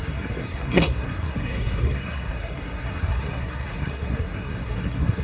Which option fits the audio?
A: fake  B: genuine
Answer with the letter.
A